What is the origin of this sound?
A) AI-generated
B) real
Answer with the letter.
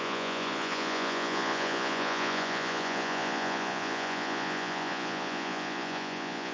A